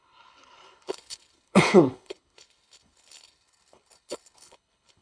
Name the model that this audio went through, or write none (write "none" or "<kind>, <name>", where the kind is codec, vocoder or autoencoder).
codec, HILCodec